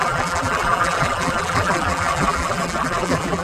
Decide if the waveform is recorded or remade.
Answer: remade